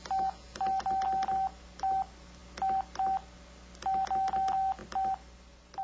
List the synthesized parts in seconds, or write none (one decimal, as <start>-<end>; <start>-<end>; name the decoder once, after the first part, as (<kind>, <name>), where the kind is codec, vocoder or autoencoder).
none